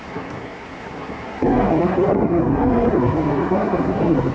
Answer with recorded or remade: remade